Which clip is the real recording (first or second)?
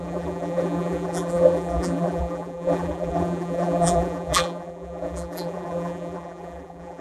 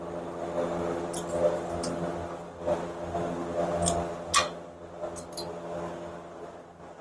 second